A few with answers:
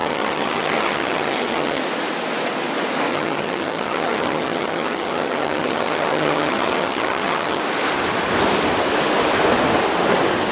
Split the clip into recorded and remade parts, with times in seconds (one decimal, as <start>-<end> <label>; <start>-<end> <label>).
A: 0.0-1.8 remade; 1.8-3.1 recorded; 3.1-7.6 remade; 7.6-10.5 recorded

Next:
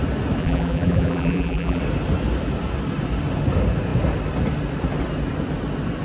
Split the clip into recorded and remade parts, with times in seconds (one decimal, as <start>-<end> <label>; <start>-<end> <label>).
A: 0.0-0.4 recorded; 0.4-1.8 remade; 1.8-6.0 recorded

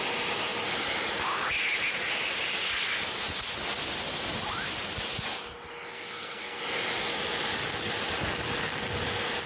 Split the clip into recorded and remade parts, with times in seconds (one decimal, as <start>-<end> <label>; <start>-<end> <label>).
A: 0.0-5.7 recorded; 5.7-6.6 remade; 6.6-9.5 recorded